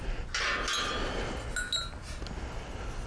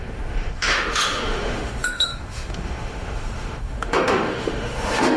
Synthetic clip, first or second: second